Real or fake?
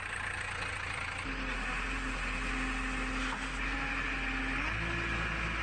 real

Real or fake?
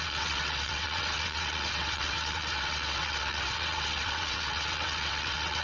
fake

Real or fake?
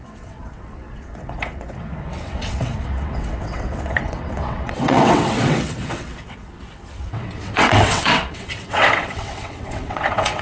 fake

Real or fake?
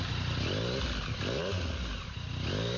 real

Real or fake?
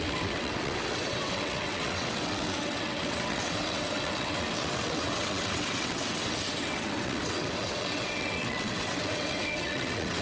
fake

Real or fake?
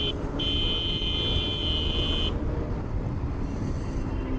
real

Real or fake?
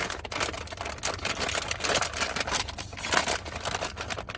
real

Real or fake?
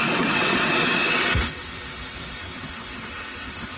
fake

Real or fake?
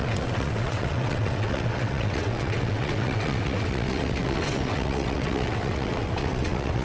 fake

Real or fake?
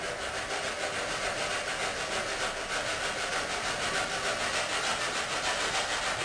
real